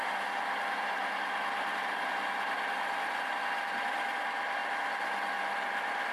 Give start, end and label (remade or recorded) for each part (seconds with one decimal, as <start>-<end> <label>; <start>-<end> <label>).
0.0-6.1 recorded